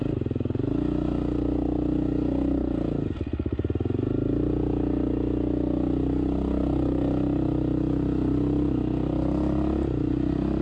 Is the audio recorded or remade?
recorded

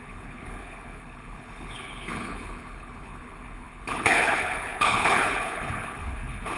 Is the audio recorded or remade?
remade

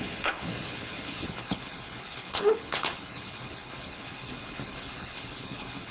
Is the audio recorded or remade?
remade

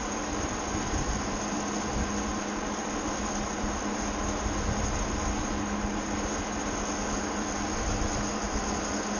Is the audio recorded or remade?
recorded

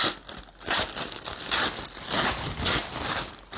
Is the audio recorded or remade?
recorded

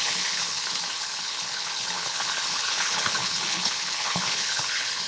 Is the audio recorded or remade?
remade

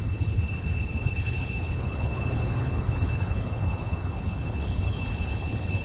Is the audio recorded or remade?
remade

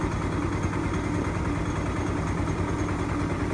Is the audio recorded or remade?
recorded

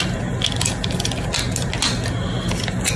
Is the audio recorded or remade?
recorded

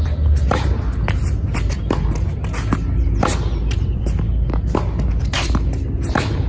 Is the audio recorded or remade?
recorded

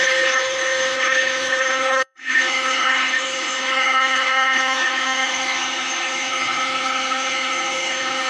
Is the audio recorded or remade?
remade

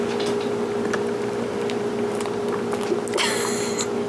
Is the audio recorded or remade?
recorded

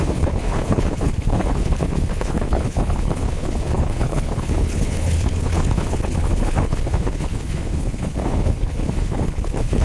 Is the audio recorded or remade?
remade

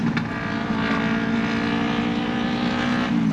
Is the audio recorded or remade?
recorded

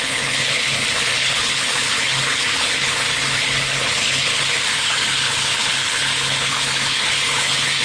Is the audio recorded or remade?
remade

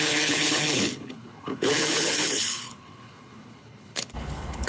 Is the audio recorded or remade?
remade